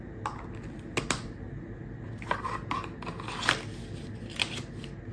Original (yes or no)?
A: yes